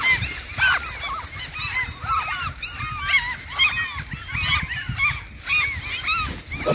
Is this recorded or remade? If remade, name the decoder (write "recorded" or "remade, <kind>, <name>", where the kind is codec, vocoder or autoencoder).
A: recorded